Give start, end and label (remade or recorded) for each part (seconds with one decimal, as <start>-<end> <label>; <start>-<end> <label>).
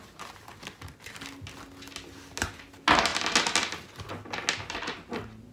0.0-5.5 recorded